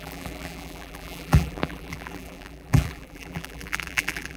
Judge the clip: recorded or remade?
remade